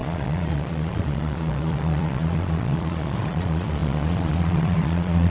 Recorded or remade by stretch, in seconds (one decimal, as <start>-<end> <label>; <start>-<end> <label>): 0.0-5.3 remade